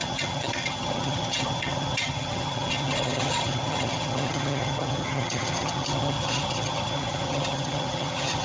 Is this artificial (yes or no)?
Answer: yes